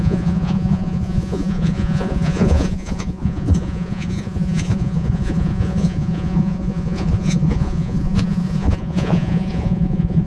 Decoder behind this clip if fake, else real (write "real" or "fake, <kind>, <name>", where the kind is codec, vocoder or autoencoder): fake, vocoder, Vocos